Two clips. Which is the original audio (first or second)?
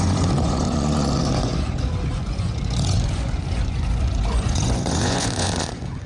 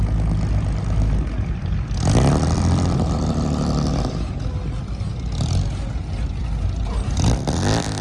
second